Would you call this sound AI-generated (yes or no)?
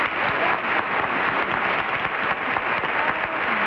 no